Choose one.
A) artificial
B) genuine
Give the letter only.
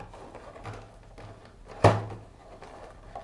B